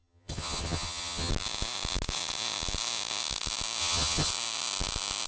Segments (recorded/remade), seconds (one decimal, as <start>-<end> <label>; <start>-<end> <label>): 0.0-1.3 remade; 1.3-3.8 recorded; 3.8-4.3 remade; 4.3-5.3 recorded